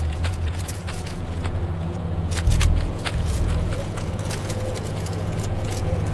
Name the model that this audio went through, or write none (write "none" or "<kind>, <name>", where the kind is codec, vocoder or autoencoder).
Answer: vocoder, Vocos